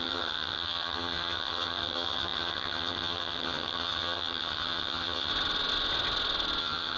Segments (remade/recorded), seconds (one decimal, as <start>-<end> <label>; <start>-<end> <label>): 0.0-5.3 remade; 5.3-6.6 recorded; 6.6-7.0 remade